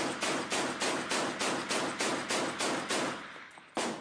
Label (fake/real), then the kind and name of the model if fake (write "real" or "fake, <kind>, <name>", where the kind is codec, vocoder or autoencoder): real